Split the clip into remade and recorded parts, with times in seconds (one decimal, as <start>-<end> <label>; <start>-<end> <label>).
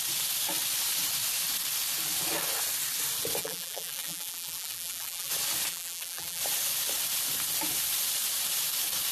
0.0-3.4 recorded; 3.4-5.3 remade; 5.3-5.7 recorded; 5.7-6.4 remade; 6.4-9.1 recorded